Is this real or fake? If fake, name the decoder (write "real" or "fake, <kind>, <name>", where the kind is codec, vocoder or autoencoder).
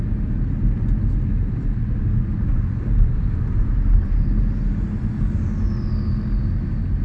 real